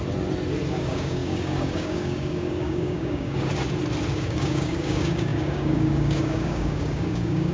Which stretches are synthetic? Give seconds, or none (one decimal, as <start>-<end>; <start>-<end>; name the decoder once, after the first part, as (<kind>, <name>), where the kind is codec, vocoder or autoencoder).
0.7-3.5 (codec, DAC); 4.1-7.5